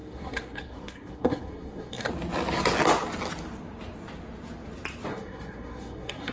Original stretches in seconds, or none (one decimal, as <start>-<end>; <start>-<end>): 2.1-5.1